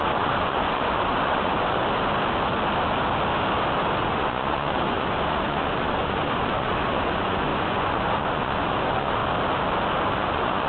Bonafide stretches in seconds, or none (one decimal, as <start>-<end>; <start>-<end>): 1.8-4.0; 9.2-10.1